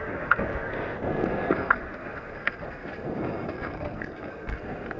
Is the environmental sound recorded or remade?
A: remade